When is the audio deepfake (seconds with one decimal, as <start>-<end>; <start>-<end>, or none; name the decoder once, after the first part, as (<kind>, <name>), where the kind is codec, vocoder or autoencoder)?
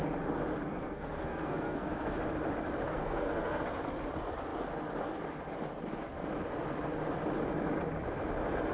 0.7-2.1 (codec, SNAC); 2.9-3.6